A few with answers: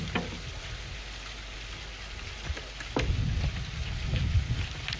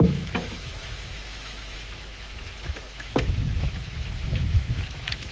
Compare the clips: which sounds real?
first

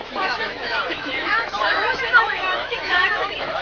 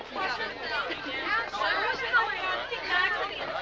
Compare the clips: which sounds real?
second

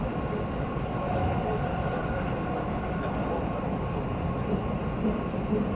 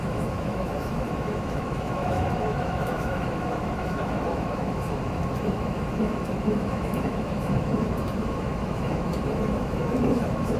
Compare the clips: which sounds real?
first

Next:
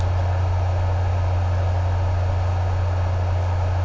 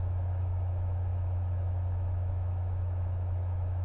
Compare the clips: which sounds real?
first